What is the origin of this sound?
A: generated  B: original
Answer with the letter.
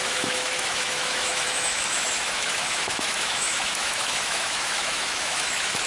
A